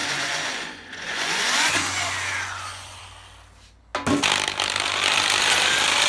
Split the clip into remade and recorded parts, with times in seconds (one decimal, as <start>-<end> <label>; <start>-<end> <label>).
0.0-3.0 remade; 3.0-6.1 recorded